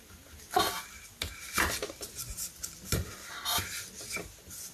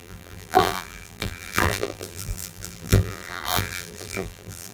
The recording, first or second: first